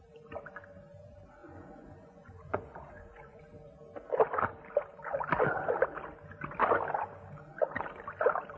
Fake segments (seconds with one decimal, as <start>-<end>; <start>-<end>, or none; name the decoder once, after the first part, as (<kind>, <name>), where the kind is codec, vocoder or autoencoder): 1.4-3.4 (vocoder, Vocos)